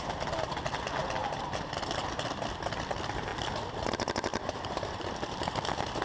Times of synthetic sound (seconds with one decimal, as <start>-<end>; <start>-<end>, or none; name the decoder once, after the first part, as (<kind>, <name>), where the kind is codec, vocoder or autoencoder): 4.3-5.1 (vocoder, BigVGAN v2)